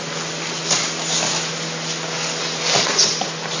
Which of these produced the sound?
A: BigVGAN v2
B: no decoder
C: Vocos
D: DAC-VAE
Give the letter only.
B